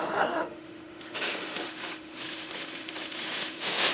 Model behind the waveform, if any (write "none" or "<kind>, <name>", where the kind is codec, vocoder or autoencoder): autoencoder, DAC-VAE